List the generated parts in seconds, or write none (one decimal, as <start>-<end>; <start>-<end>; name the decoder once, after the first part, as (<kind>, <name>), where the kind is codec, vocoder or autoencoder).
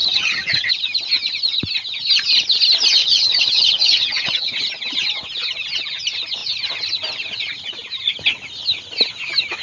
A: 0.0-0.7 (vocoder, HiFi-GAN); 3.0-4.5